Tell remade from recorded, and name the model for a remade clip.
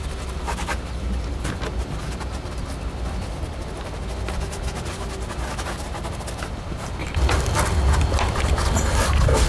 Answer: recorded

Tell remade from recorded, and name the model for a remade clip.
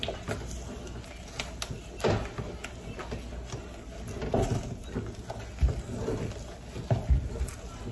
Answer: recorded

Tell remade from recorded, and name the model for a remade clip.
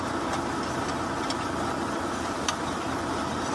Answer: recorded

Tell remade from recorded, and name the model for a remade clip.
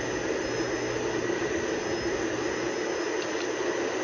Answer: recorded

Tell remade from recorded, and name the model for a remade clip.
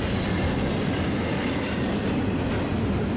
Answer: recorded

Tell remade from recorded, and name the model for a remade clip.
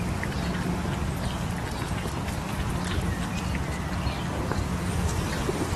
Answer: recorded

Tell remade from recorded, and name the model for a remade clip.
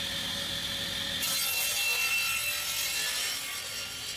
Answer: recorded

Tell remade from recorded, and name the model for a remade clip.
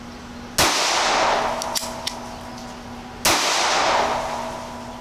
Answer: recorded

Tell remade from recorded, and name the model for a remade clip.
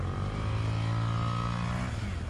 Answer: recorded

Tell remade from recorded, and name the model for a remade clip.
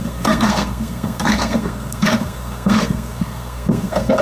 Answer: remade, codec, SNAC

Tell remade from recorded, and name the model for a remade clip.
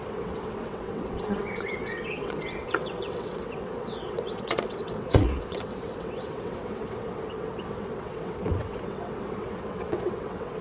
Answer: remade, vocoder, WaveNeXt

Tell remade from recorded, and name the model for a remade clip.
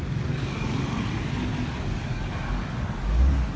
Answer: remade, codec, DAC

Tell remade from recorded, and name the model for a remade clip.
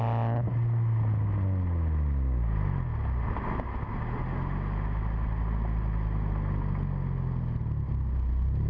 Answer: recorded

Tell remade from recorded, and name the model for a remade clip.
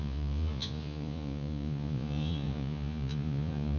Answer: remade, vocoder, Vocos